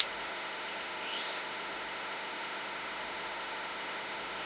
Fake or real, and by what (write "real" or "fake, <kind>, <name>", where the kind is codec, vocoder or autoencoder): fake, autoencoder, DAC-VAE